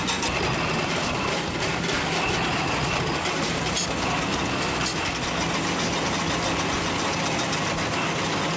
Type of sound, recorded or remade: recorded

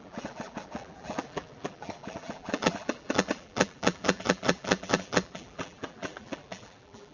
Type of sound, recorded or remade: remade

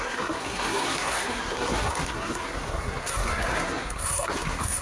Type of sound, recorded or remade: remade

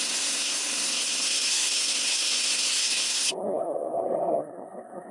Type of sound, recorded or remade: remade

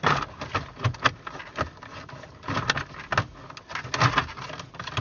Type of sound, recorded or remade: recorded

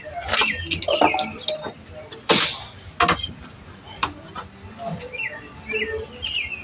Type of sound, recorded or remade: recorded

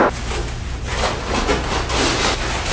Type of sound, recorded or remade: recorded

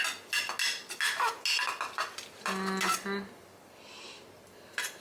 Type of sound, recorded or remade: recorded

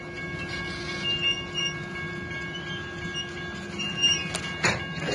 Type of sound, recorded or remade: recorded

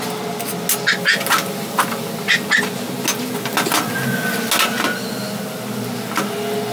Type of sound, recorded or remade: recorded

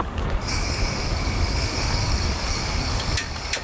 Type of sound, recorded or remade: remade